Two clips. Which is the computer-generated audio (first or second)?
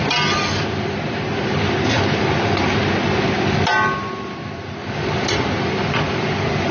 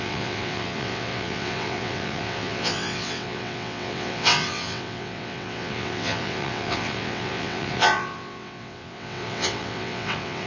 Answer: second